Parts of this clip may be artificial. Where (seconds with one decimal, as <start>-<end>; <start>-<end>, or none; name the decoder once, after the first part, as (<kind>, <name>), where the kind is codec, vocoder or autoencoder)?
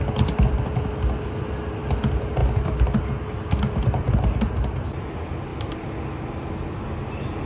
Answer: none